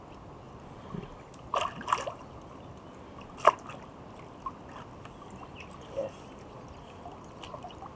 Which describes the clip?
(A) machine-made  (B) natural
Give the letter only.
B